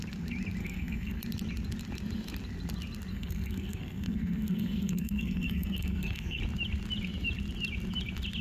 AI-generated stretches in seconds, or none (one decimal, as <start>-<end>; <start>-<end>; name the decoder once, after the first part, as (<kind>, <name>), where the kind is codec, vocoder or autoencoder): 0.6-1.2 (codec, SNAC); 3.1-6.4